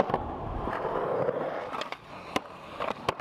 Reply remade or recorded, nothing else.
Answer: recorded